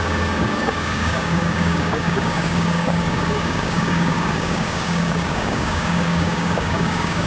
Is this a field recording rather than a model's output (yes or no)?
no